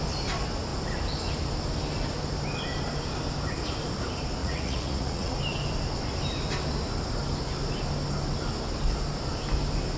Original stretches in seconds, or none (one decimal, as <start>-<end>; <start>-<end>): 0.0-4.4; 5.4-10.0